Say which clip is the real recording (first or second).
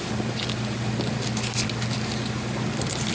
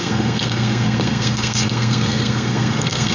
first